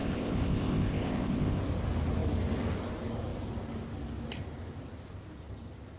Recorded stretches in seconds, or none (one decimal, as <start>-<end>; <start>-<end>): 1.6-6.0